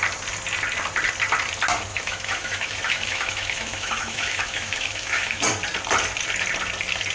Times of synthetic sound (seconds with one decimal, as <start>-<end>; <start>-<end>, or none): 1.9-5.4